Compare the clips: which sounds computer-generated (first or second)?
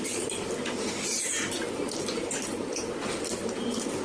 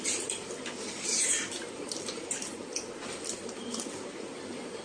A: second